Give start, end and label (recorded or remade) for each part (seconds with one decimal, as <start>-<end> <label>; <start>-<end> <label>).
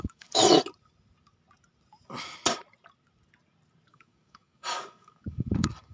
0.0-0.4 remade; 0.4-3.9 recorded; 3.9-5.9 remade